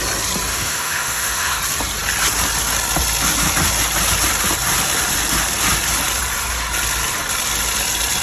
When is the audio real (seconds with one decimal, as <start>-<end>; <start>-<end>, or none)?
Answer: 0.0-0.5; 1.6-8.2